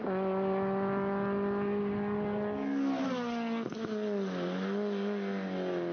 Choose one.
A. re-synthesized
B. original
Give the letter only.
B